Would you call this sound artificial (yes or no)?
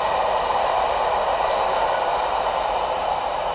no